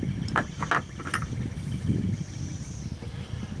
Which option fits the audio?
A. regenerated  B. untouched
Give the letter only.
B